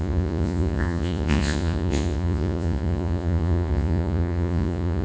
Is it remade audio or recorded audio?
remade